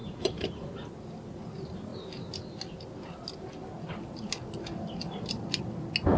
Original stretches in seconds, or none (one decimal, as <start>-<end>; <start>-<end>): 0.7-6.2